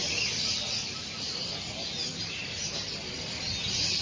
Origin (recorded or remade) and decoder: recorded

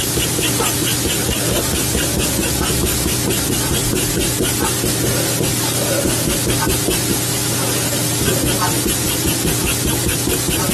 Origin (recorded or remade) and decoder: recorded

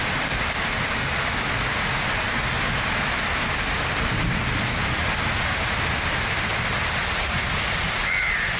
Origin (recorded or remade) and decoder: recorded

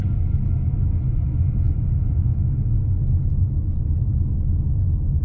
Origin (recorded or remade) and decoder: recorded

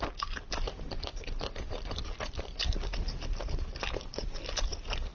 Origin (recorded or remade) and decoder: recorded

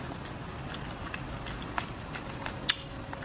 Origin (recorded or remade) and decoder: recorded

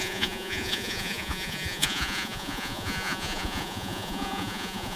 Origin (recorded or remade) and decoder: remade, vocoder, Vocos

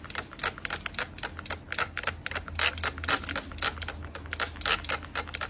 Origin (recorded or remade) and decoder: recorded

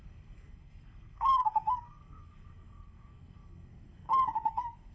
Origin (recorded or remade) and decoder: remade, codec, SNAC